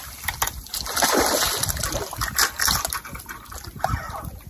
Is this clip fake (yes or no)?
no